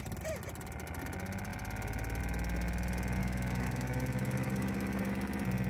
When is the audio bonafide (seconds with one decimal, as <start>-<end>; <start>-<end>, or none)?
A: 0.0-3.2; 5.1-5.7